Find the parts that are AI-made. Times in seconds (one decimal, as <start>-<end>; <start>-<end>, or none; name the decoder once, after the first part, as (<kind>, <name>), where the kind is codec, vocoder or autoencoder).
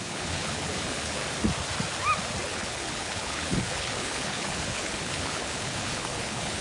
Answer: 0.0-1.2 (codec, HILCodec); 2.4-6.6